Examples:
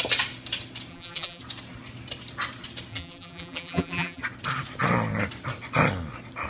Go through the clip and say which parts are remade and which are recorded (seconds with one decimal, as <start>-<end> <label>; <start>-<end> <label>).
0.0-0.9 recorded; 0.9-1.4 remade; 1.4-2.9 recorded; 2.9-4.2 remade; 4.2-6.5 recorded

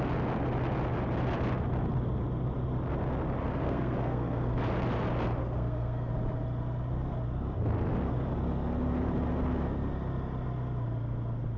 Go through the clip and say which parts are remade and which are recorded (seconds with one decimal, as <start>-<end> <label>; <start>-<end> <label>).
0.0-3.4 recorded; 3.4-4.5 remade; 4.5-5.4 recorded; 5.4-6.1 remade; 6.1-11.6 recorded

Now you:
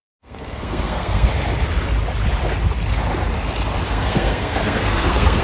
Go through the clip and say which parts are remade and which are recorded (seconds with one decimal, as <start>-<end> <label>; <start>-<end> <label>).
0.0-1.3 remade; 1.3-3.9 recorded; 3.9-5.4 remade

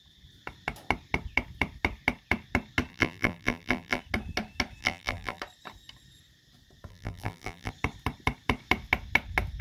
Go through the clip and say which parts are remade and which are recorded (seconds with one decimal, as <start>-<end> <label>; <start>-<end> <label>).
0.0-2.9 recorded; 2.9-4.0 remade; 4.0-4.8 recorded; 4.8-5.4 remade; 5.4-6.9 recorded; 6.9-7.7 remade; 7.7-9.6 recorded

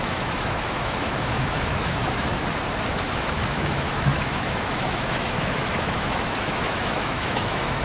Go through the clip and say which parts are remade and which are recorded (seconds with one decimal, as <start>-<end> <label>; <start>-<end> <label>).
0.0-2.3 remade; 2.3-3.1 recorded; 3.1-7.8 remade

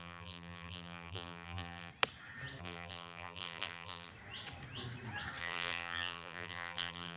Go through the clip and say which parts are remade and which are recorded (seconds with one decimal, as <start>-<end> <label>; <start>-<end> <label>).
0.0-1.9 remade; 1.9-2.6 recorded; 2.6-4.1 remade; 4.1-5.4 recorded; 5.4-7.2 remade

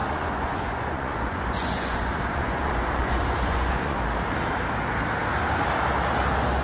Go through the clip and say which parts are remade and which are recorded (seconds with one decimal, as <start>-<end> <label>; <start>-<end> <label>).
0.0-4.0 remade; 4.0-6.6 recorded

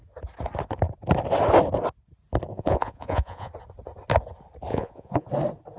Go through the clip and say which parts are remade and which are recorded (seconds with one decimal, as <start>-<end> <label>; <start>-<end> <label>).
0.0-2.5 recorded; 2.5-3.5 remade; 3.5-4.7 recorded; 4.7-5.3 remade; 5.3-5.8 recorded